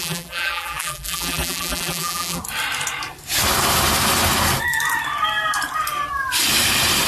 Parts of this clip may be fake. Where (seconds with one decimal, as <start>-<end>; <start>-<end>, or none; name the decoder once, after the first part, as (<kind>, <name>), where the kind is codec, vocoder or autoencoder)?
0.0-2.4 (vocoder, BigVGAN v2)